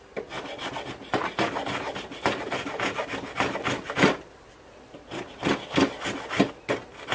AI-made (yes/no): no